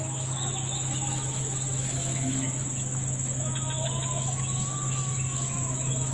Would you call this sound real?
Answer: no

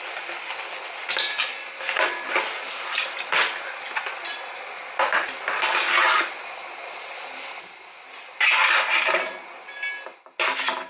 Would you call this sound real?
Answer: yes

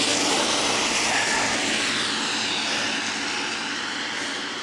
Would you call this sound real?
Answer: yes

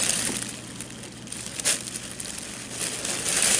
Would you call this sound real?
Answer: yes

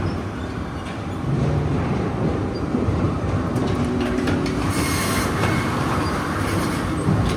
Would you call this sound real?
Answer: no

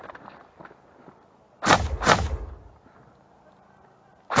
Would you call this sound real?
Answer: yes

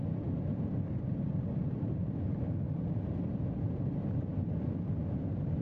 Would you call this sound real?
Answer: yes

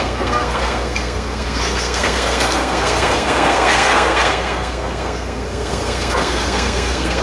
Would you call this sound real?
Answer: no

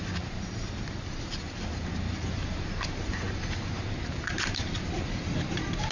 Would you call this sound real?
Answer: no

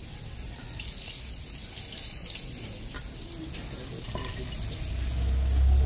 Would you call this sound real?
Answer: yes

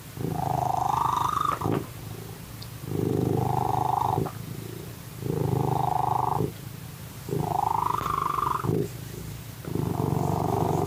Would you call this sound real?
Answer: yes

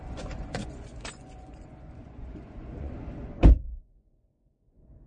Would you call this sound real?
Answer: no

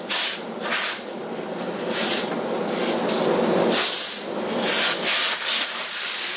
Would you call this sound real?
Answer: yes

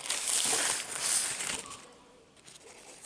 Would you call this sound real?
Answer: yes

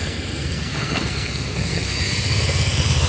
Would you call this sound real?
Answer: no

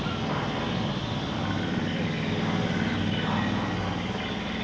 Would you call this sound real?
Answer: yes